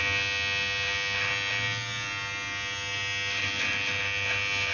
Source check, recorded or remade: recorded